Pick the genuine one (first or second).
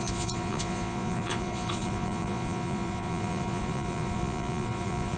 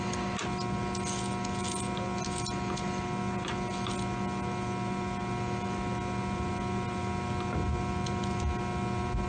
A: second